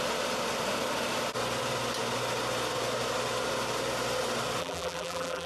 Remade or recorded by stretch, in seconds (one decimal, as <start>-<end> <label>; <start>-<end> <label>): 0.0-4.6 recorded; 4.6-5.5 remade